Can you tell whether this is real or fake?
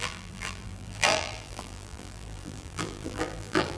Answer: fake